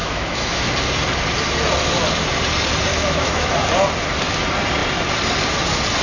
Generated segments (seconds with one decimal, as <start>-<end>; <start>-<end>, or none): 0.0-0.7; 2.9-3.5